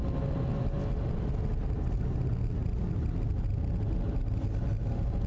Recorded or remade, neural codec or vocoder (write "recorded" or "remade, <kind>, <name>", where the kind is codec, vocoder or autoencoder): recorded